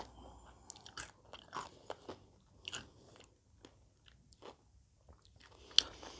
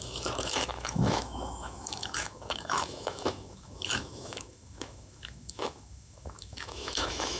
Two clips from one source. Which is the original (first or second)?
first